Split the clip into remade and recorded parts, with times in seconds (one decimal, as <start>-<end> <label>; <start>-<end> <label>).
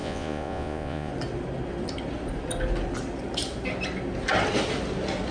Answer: 0.0-1.1 remade; 1.1-5.3 recorded